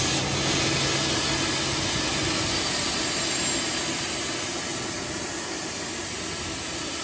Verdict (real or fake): real